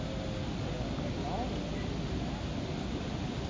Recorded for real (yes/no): yes